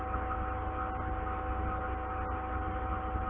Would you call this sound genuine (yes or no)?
yes